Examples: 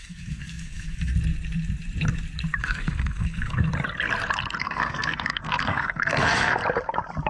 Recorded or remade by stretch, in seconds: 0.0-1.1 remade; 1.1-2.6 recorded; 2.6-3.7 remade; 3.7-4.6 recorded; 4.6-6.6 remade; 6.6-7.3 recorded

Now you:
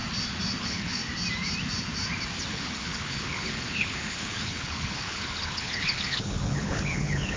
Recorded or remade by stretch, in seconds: 0.0-0.6 recorded; 0.6-1.0 remade; 1.0-2.5 recorded; 2.5-7.4 remade

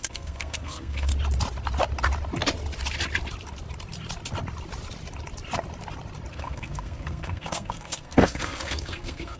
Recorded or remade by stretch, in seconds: 0.0-1.1 remade; 1.1-6.3 recorded; 6.3-9.4 remade

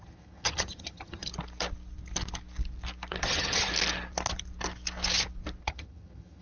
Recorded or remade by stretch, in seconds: 0.0-1.3 remade; 1.3-3.2 recorded; 3.2-3.7 remade; 3.7-5.6 recorded; 5.6-6.4 remade

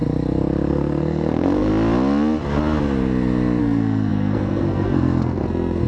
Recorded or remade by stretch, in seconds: 0.0-0.7 recorded; 0.7-1.7 remade; 1.7-3.6 recorded; 3.6-5.9 remade

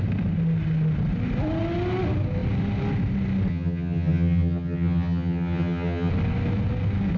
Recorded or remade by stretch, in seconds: 0.0-3.5 recorded; 3.5-6.1 remade; 6.1-7.2 recorded

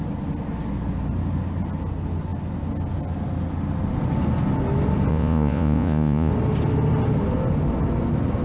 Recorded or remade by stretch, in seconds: 0.0-5.1 recorded; 5.1-6.3 remade; 6.3-8.4 recorded